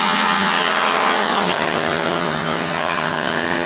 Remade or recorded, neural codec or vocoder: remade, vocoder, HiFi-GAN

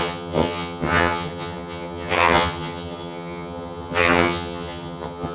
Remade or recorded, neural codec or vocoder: remade, vocoder, HiFi-GAN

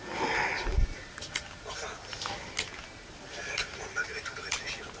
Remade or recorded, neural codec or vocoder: recorded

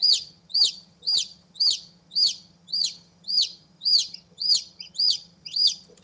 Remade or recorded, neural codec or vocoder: remade, vocoder, HiFi-GAN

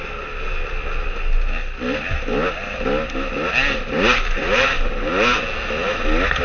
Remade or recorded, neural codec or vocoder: recorded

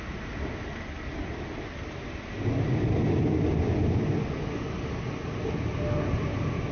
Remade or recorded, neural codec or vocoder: recorded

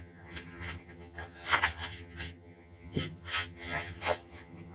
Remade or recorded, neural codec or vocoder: remade, vocoder, HiFi-GAN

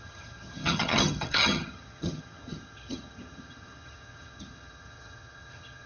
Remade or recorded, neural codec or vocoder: remade, vocoder, HiFi-GAN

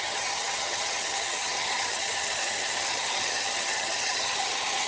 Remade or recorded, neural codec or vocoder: remade, vocoder, HiFi-GAN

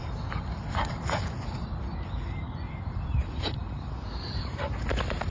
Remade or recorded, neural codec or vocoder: recorded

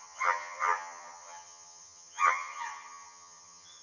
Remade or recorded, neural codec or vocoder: remade, vocoder, HiFi-GAN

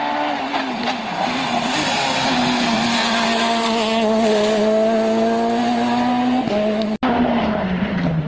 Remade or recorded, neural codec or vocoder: recorded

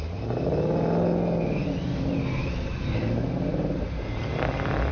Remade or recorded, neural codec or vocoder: recorded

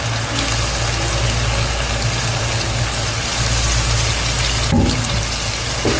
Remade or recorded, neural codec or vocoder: recorded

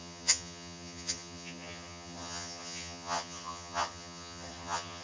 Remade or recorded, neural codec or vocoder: remade, vocoder, HiFi-GAN